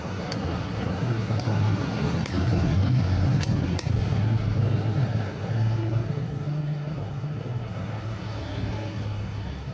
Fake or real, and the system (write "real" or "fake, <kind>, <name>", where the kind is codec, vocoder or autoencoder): fake, codec, SNAC